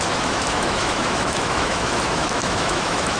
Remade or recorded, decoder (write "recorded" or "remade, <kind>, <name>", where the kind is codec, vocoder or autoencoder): remade, autoencoder, DAC-VAE